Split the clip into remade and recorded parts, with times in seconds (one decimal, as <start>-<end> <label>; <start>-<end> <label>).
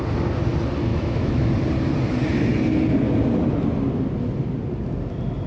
0.0-0.9 recorded; 0.9-1.5 remade; 1.5-5.5 recorded